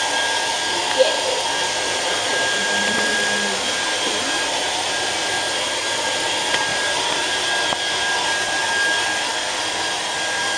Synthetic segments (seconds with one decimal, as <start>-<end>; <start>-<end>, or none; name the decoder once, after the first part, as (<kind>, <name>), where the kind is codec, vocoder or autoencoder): 1.6-5.4 (vocoder, BigVGAN v2); 6.7-7.3